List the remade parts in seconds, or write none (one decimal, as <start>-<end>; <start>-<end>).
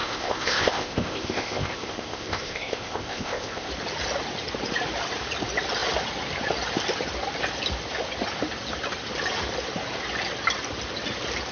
0.0-3.7